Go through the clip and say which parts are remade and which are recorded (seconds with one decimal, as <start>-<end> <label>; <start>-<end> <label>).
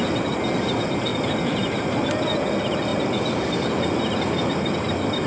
0.0-5.3 recorded